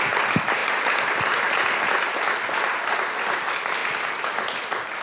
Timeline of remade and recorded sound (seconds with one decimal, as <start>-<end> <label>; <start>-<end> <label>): 0.0-5.0 recorded